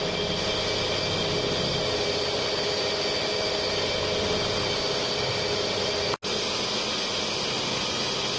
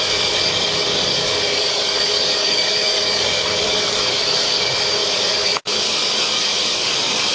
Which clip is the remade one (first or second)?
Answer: second